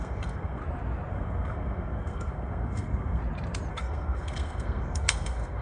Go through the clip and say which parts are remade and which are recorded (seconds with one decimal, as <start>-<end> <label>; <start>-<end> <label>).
0.0-0.6 remade; 0.6-1.1 recorded; 1.1-3.2 remade; 3.2-3.7 recorded; 3.7-5.6 remade